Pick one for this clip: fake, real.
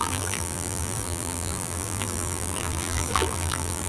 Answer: fake